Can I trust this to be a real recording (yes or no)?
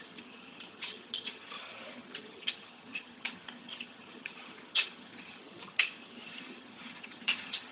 no